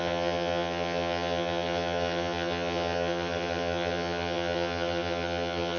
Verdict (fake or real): fake